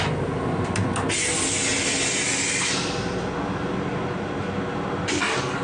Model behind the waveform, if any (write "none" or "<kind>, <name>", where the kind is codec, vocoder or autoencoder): none